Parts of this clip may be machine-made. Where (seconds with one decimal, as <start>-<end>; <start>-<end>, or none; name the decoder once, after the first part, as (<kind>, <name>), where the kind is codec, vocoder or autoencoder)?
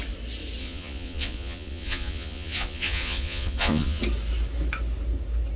0.6-4.0 (vocoder, Vocos)